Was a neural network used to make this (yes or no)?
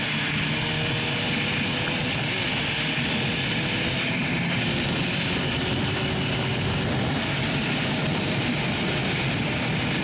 no